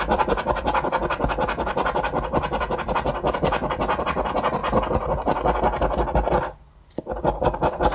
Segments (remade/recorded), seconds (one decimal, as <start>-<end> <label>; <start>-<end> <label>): 0.0-4.6 remade; 4.6-7.0 recorded; 7.0-7.9 remade